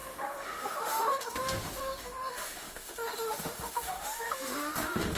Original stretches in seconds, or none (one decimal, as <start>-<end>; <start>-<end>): none